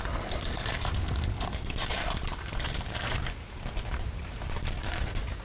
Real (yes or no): no